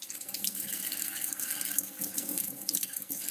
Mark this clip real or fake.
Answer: fake